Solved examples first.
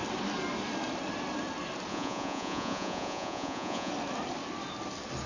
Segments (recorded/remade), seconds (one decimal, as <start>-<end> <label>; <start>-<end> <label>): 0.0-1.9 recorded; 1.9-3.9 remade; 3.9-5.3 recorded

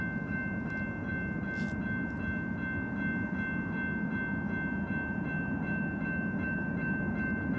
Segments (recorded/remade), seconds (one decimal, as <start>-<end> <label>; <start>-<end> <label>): 0.0-7.6 recorded

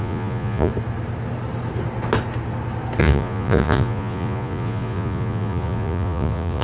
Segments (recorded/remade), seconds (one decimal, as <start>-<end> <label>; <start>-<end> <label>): 0.0-0.7 remade; 0.7-3.0 recorded; 3.0-6.6 remade

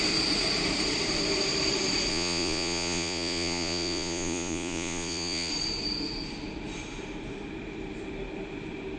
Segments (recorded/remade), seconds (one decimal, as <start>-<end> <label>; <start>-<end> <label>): 0.0-2.1 recorded; 2.1-5.5 remade; 5.5-9.0 recorded

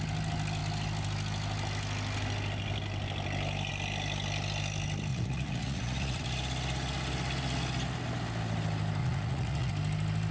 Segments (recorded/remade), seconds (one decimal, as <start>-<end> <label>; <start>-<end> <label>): 0.0-5.1 recorded; 5.1-6.2 remade; 6.2-9.0 recorded; 9.0-9.7 remade; 9.7-10.3 recorded

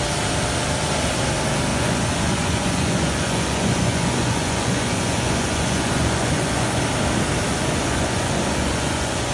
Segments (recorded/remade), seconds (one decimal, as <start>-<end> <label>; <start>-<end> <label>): 0.0-1.7 recorded; 1.7-6.8 remade; 6.8-7.5 recorded; 7.5-9.3 remade

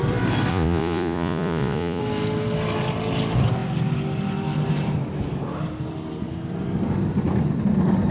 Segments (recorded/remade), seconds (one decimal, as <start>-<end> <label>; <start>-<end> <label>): 0.0-0.5 recorded; 0.5-2.0 remade; 2.0-8.1 recorded